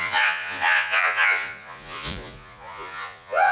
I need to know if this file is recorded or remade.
remade